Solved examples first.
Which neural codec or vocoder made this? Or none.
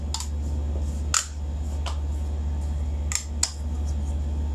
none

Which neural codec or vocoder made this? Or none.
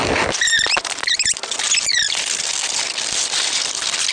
none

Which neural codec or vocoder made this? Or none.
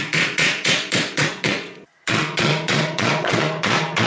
vocoder, Vocos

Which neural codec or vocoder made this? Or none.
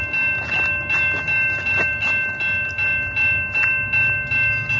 none